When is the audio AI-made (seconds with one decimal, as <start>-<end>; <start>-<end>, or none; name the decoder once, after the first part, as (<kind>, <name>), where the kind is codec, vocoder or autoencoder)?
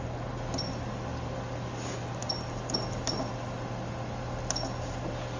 none